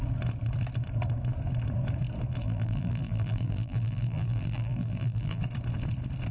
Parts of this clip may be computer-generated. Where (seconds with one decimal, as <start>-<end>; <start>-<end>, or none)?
2.4-5.4

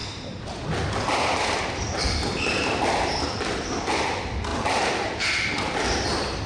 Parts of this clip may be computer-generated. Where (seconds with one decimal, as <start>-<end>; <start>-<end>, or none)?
0.0-3.9